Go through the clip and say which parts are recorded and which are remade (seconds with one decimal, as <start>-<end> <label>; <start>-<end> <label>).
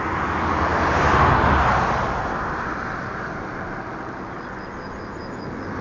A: 0.0-5.8 recorded